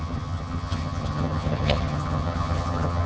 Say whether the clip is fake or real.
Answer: fake